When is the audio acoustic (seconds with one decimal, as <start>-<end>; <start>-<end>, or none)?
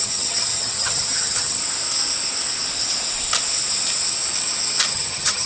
1.6-4.9